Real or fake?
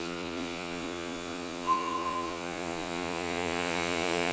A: fake